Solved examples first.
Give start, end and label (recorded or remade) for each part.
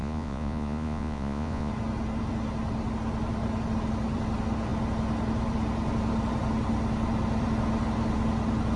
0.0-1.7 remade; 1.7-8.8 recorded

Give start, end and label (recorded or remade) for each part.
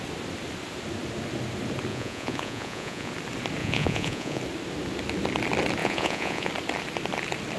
0.0-1.9 recorded; 1.9-3.1 remade; 3.1-3.6 recorded; 3.6-4.4 remade; 4.4-5.8 recorded; 5.8-6.5 remade; 6.5-7.6 recorded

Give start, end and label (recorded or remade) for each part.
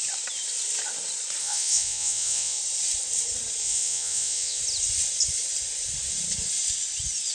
0.0-1.4 recorded; 1.4-2.6 remade; 2.6-3.6 recorded; 3.6-4.6 remade; 4.6-7.3 recorded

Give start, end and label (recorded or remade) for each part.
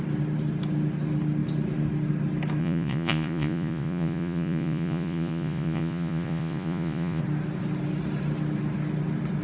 0.0-2.6 recorded; 2.6-7.2 remade; 7.2-9.4 recorded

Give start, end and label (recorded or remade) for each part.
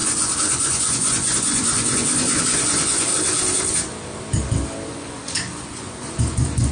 0.0-3.1 remade; 3.1-4.9 recorded; 4.9-6.7 remade